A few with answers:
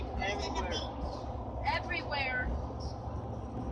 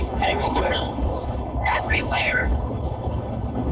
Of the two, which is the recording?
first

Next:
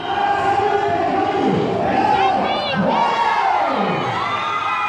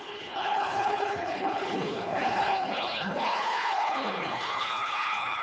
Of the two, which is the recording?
first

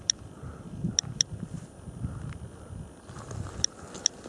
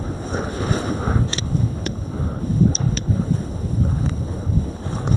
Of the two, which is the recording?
first